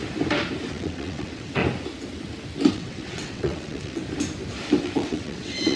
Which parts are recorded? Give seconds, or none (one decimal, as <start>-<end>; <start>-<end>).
0.0-0.7; 1.6-2.7; 4.0-4.8

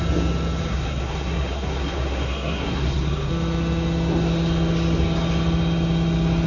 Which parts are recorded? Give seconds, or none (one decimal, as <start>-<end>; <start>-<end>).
0.0-0.7; 3.3-6.5

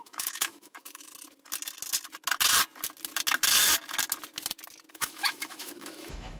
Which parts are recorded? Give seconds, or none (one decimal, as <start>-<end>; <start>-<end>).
1.1-4.9

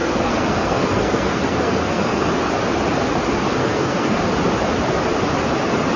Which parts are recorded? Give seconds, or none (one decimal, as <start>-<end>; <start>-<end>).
2.5-3.6; 4.2-6.0

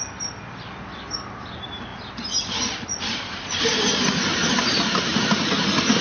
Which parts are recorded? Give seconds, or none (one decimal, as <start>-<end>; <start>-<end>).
0.0-6.0